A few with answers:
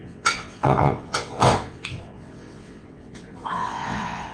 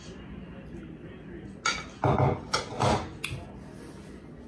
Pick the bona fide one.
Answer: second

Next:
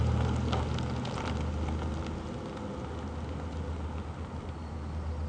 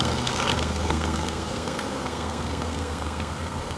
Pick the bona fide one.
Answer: first